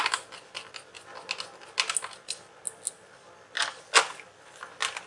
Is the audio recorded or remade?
recorded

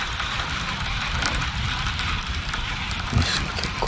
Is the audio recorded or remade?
recorded